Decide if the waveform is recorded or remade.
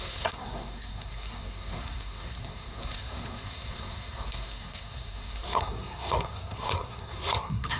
remade